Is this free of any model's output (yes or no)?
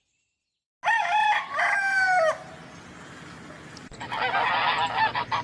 yes